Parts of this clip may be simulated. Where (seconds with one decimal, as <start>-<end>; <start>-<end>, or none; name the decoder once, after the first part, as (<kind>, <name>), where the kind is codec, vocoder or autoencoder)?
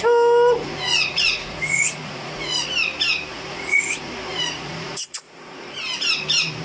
0.6-2.7 (vocoder, Vocos); 3.3-5.8